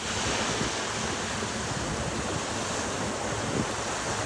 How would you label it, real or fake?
real